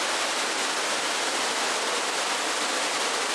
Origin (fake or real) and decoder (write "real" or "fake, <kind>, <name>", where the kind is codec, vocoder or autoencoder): real